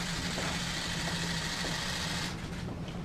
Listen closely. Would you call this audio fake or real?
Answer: real